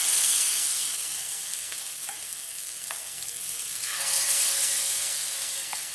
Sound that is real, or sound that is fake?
fake